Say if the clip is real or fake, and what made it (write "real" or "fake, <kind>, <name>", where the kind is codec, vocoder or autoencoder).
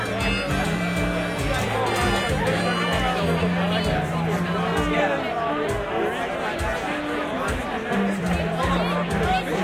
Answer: real